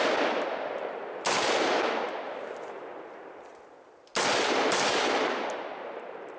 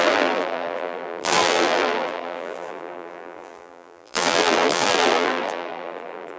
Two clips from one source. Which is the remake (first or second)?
second